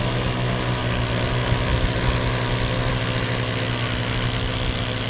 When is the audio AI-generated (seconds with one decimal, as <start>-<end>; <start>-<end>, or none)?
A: none